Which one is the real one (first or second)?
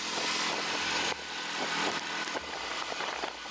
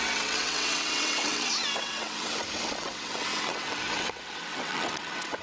first